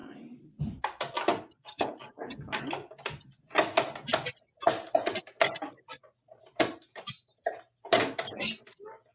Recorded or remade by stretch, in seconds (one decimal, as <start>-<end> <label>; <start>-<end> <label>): 0.0-0.8 remade; 0.8-5.9 recorded; 5.9-8.3 remade; 8.3-9.1 recorded